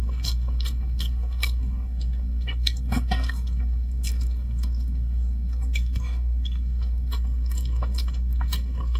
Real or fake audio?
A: fake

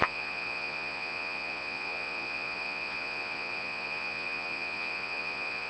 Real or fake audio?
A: fake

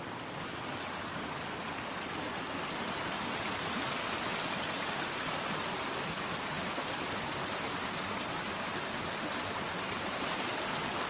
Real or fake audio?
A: real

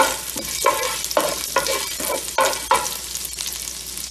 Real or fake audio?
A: real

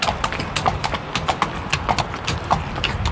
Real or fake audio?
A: fake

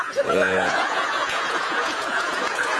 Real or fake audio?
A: fake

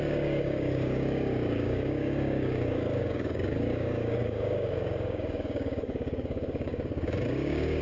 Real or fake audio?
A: fake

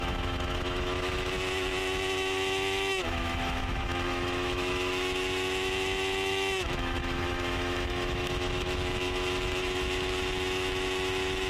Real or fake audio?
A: fake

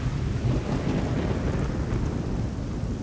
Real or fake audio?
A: real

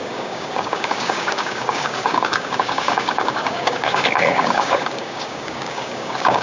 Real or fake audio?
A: fake